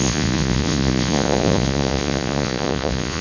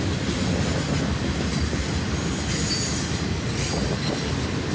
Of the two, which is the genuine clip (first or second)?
second